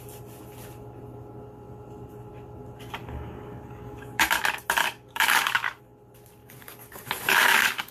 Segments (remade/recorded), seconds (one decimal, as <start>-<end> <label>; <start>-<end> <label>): 0.0-3.0 recorded; 3.0-4.3 remade; 4.3-4.8 recorded; 4.8-5.8 remade; 5.8-6.4 recorded; 6.4-7.9 remade